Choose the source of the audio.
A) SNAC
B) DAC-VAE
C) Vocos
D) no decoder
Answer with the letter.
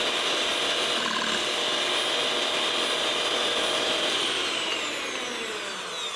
D